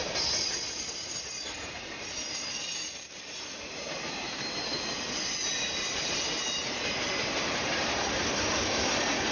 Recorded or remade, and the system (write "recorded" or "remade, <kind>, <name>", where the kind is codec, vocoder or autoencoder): remade, vocoder, BigVGAN v2